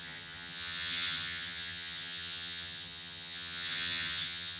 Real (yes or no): no